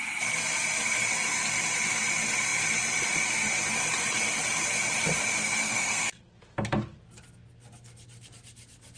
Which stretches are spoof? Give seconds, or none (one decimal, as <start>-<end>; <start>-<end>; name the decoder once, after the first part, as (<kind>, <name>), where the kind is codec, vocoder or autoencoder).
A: 5.4-6.2 (codec, SNAC)